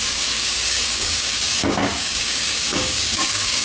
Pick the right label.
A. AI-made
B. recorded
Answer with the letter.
A